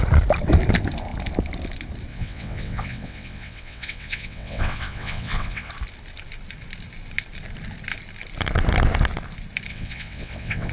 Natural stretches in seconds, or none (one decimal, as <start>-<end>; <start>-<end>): 0.0-2.1; 5.7-9.7